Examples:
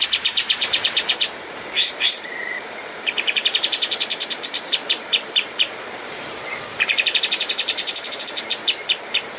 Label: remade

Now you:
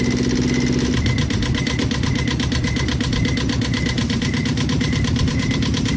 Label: recorded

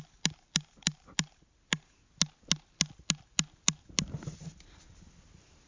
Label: recorded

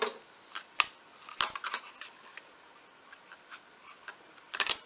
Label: recorded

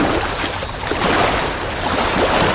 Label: recorded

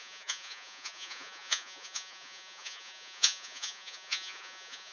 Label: remade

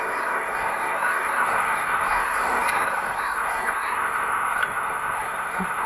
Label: remade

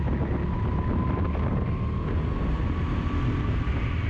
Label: recorded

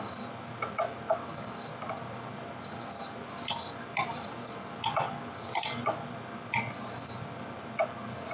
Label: recorded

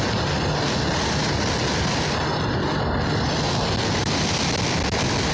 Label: recorded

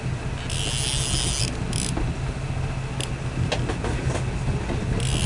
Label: recorded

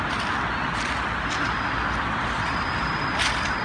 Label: recorded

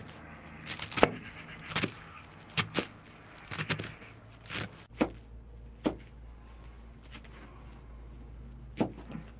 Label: recorded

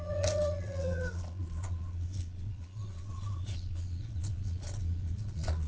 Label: remade